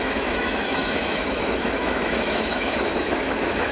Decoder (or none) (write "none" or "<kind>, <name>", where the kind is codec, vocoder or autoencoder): autoencoder, DAC-VAE